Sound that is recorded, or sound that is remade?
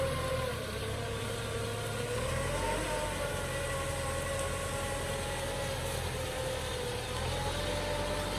recorded